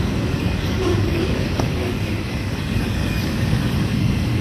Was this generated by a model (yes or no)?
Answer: yes